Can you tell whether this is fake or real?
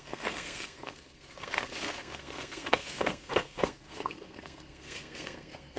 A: fake